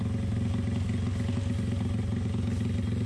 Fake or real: real